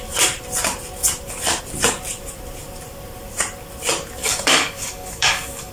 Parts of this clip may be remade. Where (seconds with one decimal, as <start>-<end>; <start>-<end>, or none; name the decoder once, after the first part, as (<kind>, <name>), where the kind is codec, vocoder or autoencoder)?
4.2-5.7 (codec, DAC)